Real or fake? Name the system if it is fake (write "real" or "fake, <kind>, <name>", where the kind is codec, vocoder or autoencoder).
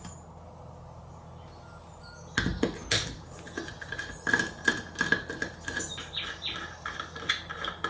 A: real